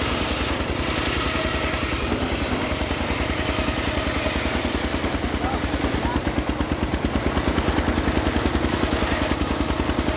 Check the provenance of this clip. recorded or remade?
remade